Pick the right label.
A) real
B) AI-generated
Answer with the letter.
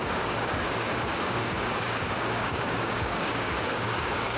B